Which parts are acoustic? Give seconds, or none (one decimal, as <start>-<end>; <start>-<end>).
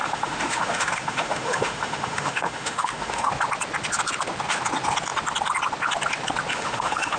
3.3-6.5